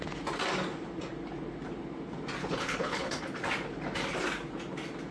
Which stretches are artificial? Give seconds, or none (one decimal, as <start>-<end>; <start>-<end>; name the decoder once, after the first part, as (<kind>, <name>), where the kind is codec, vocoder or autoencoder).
2.4-3.2 (codec, HILCodec)